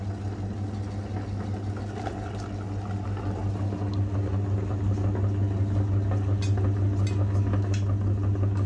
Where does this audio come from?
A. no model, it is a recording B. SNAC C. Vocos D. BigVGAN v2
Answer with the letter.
A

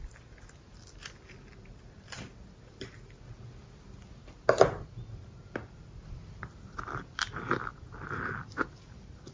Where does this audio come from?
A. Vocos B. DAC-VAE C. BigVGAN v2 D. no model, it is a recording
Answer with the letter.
D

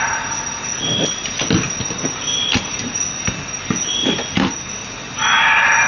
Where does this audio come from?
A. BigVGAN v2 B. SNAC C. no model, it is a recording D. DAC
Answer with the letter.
C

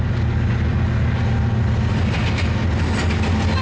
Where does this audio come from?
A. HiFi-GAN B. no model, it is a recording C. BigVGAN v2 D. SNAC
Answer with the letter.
B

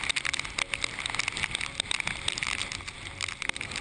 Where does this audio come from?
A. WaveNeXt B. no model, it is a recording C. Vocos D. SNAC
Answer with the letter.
B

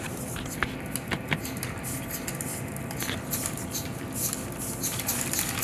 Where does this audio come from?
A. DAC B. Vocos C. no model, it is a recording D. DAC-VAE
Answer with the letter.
C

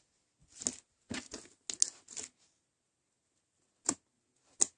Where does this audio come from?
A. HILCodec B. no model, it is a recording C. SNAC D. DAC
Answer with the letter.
B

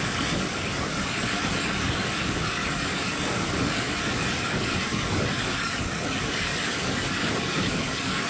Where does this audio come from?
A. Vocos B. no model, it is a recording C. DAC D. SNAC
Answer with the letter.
C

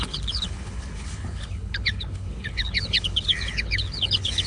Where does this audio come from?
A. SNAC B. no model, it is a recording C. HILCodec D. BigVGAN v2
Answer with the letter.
C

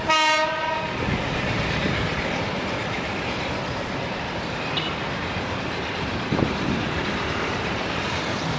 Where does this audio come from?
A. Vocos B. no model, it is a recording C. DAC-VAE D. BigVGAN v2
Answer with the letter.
D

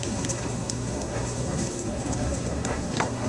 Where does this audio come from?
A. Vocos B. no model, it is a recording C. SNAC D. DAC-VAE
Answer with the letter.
C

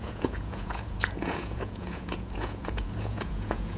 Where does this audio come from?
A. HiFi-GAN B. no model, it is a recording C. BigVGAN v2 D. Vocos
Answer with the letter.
D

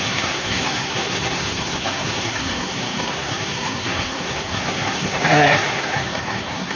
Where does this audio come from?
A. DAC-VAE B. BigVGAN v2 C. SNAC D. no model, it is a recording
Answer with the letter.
C